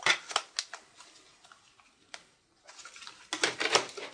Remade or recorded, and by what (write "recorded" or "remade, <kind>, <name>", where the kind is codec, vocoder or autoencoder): recorded